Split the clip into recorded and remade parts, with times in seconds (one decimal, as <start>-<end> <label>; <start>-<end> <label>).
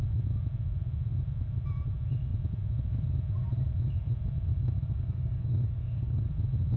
0.0-4.5 recorded; 4.5-6.3 remade; 6.3-6.8 recorded